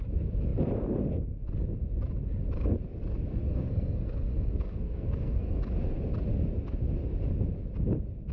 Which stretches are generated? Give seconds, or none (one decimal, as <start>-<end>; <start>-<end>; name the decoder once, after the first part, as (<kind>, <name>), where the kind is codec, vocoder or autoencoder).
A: 3.3-5.6 (codec, SNAC)